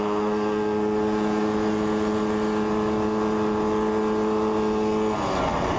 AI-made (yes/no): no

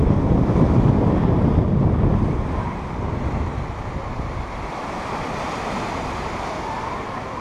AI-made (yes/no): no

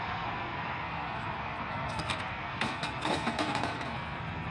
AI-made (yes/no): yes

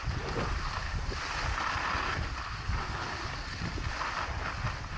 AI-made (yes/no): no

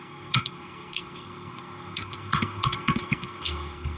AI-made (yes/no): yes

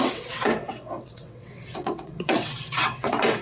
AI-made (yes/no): yes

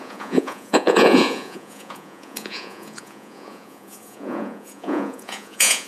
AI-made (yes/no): yes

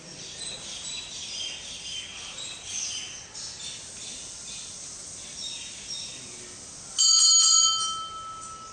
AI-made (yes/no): no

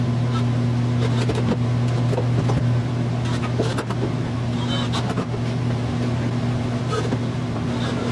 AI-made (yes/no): no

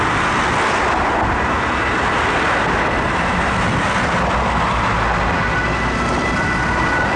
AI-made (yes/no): no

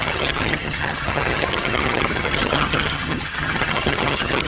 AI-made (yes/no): yes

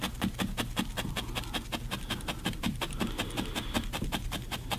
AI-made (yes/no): no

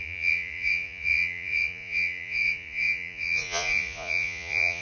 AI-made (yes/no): yes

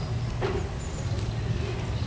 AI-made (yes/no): no